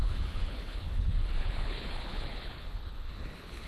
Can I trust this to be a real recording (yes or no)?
no